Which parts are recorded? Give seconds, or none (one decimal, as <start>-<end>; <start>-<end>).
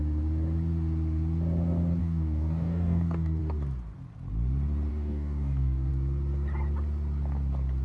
0.0-2.0; 3.4-4.9; 5.9-7.8